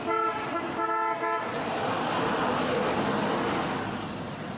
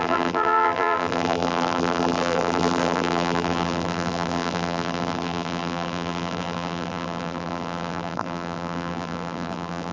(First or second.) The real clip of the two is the first